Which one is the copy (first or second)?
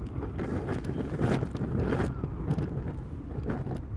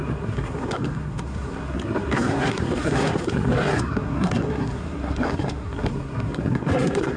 second